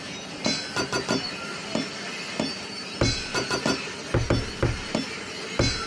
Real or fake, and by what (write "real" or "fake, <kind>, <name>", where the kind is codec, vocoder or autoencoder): real